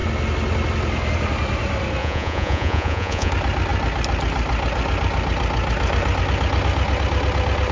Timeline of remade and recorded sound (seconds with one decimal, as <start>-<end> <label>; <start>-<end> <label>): 0.0-2.0 recorded; 2.0-3.3 remade; 3.3-7.7 recorded